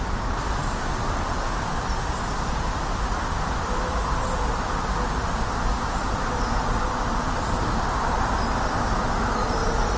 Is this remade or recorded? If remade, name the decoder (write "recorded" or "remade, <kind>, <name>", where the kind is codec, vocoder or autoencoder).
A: recorded